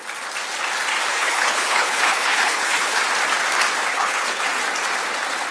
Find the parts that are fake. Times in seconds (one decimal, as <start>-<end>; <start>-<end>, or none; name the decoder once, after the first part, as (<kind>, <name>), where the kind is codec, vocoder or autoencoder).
1.1-3.0 (codec, HILCodec); 3.9-4.4